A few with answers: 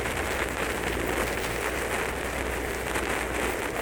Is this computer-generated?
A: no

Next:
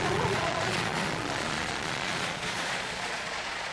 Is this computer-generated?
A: yes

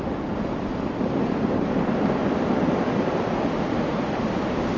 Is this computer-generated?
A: no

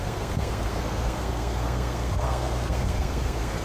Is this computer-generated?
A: yes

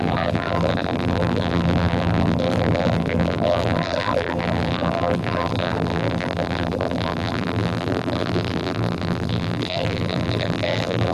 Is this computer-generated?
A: yes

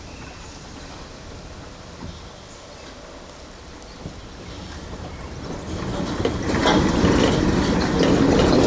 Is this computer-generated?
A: no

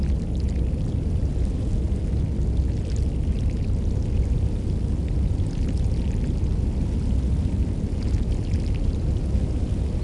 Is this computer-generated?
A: no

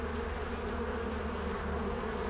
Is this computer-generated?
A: no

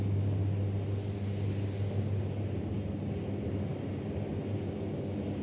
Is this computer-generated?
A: no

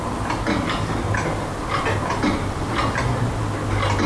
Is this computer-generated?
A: no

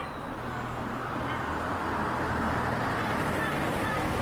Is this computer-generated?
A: no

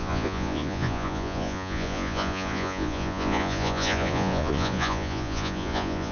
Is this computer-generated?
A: yes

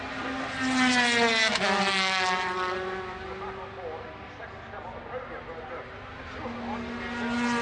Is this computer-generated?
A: no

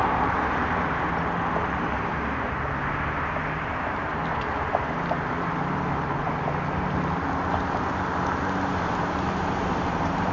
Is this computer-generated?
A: no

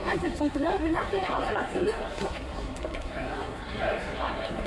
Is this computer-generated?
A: yes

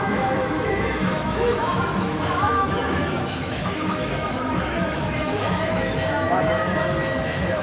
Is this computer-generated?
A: yes